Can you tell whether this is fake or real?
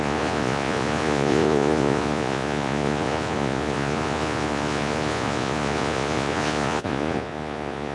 fake